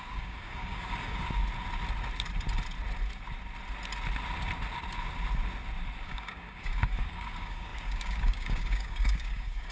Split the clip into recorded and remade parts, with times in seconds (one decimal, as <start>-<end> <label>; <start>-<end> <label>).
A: 0.0-1.4 remade; 1.4-6.0 recorded; 6.0-9.7 remade